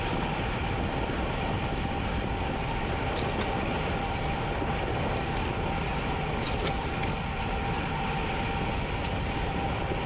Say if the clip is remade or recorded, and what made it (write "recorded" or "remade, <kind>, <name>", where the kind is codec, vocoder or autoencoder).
recorded